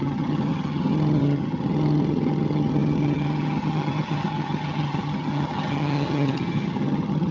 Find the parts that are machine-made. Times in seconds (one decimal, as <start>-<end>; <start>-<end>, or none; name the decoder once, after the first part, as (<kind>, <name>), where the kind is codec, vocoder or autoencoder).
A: 0.0-7.3 (vocoder, HiFi-GAN)

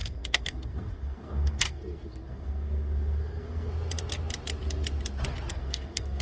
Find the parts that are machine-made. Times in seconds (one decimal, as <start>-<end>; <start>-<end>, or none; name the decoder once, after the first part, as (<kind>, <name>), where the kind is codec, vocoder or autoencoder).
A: 0.0-3.7 (codec, SNAC); 5.5-6.2